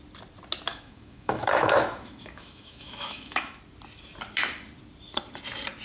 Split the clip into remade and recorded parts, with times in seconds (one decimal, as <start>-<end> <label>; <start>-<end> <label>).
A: 0.0-0.7 recorded; 0.7-3.6 remade; 3.6-5.8 recorded